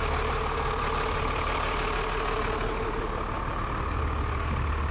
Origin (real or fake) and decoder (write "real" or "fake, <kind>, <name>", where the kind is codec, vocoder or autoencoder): real